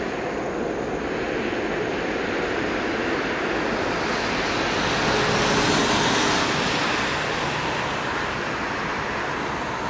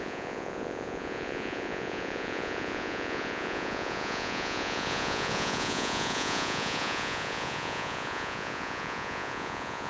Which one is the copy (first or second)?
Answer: second